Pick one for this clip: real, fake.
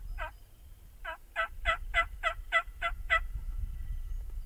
real